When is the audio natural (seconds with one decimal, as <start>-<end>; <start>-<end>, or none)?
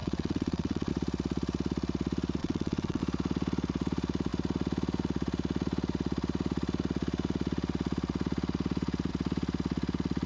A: 0.9-2.4; 3.0-10.3